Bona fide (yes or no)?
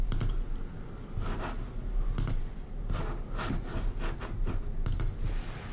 yes